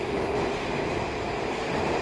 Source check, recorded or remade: recorded